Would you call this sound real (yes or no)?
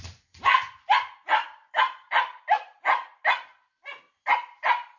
yes